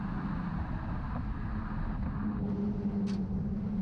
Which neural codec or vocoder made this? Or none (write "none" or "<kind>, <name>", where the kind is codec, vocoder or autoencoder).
none